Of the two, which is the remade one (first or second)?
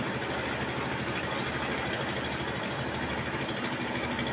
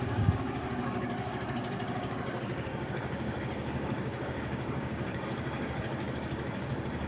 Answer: second